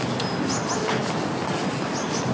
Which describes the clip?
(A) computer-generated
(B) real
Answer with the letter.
B